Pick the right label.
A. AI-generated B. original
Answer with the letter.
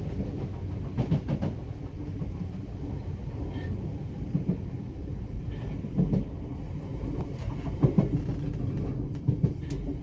B